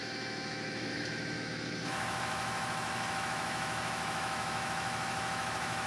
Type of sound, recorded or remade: remade